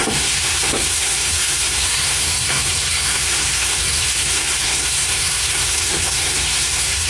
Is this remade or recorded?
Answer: remade